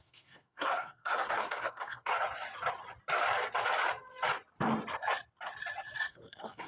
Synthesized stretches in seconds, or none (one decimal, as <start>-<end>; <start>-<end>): 0.0-2.1; 6.1-6.7